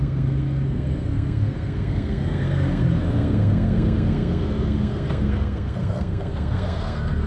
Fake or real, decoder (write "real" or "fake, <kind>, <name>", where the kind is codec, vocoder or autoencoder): fake, codec, SNAC